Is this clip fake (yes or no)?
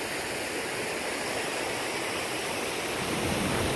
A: no